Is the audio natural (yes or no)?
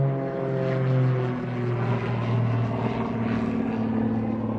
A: yes